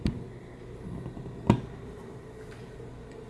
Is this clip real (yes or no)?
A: yes